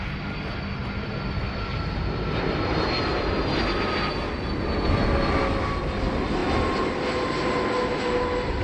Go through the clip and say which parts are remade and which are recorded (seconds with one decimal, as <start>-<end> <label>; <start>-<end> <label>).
0.0-8.6 recorded